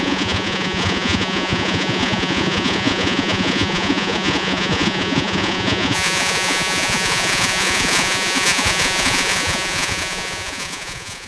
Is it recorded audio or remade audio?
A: remade